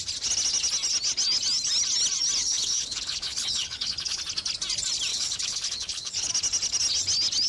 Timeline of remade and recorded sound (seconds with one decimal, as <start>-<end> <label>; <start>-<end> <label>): 0.0-2.4 recorded; 2.4-4.2 remade; 4.2-5.1 recorded; 5.1-6.3 remade; 6.3-7.5 recorded